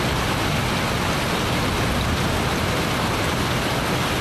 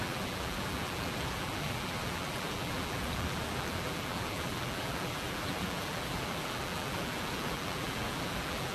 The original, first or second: first